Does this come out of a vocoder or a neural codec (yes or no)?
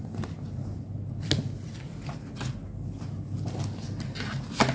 no